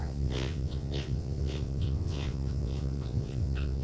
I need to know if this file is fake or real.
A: fake